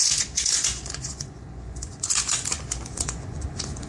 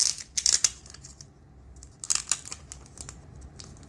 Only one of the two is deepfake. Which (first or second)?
first